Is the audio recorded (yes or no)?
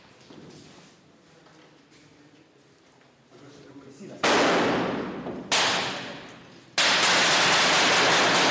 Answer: yes